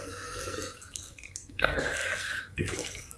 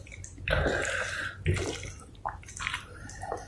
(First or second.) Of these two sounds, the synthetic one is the first